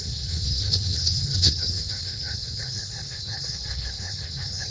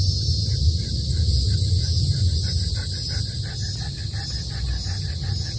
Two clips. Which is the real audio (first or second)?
second